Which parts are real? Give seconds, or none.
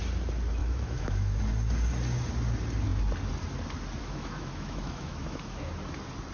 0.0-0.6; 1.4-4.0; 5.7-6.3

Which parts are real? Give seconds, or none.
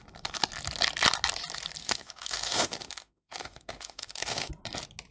0.0-1.8; 4.5-5.1